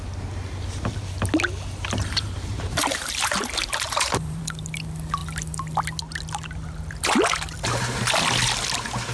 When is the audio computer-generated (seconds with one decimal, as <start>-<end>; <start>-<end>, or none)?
2.0-4.4